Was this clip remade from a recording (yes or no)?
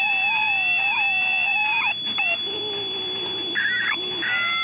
no